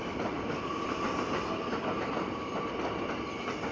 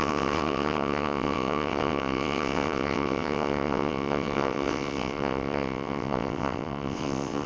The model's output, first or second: second